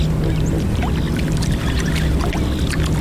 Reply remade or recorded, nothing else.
recorded